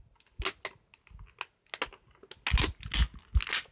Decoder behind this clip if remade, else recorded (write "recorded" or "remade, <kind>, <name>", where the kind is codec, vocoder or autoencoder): recorded